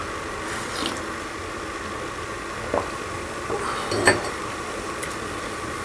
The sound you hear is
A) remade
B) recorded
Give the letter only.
B